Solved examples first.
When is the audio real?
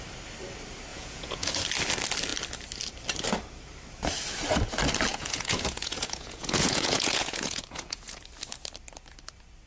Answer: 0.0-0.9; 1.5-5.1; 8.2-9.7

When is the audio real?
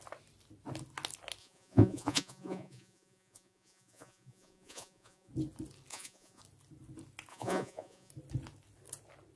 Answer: 0.0-1.4; 5.3-5.9; 6.4-7.3; 8.1-9.4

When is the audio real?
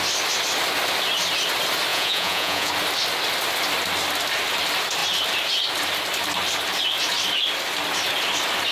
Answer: 0.0-1.9; 2.7-8.7